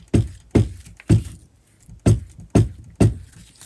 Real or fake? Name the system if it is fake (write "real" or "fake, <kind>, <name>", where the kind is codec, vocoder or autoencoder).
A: real